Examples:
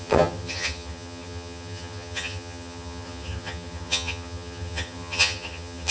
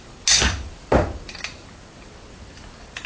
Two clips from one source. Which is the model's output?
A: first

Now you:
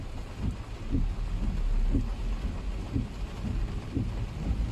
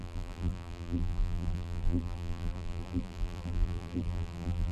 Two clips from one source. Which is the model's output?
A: second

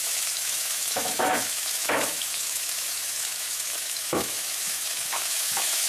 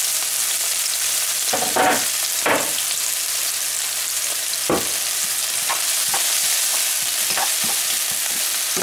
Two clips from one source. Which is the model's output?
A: first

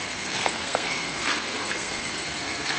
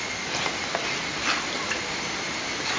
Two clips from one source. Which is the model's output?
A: first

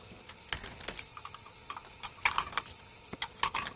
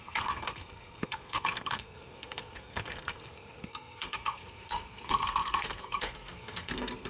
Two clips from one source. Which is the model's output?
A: second